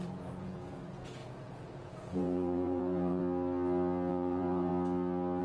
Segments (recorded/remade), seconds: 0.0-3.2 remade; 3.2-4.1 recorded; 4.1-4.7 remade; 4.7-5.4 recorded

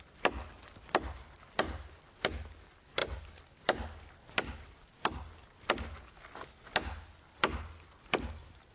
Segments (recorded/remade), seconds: 0.0-8.7 recorded

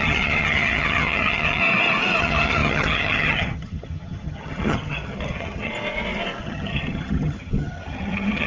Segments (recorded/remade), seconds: 0.0-1.6 remade; 1.6-2.2 recorded; 2.2-5.7 remade; 5.7-6.4 recorded; 6.4-8.5 remade

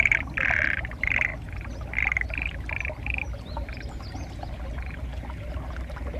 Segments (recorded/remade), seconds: 0.0-6.2 recorded

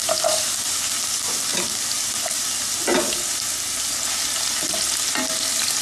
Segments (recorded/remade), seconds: 0.0-0.5 remade; 0.5-5.8 recorded